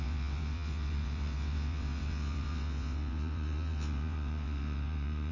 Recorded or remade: remade